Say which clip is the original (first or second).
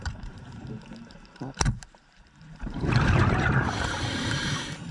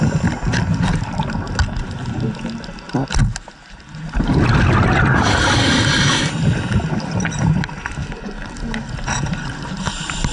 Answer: second